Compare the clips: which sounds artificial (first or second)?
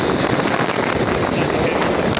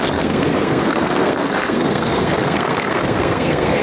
second